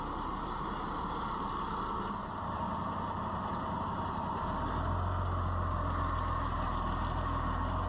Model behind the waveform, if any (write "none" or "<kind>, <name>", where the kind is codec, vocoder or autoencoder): none